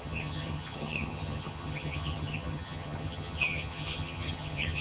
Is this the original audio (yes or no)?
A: no